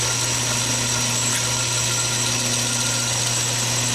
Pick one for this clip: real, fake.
real